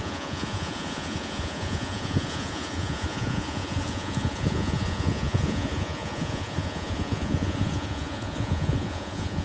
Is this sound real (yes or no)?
no